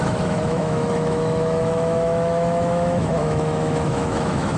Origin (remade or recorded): remade